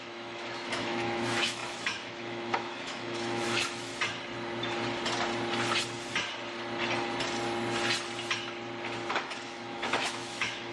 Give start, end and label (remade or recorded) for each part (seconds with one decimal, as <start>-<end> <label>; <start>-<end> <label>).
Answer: 0.0-3.9 remade; 3.9-9.1 recorded; 9.1-10.7 remade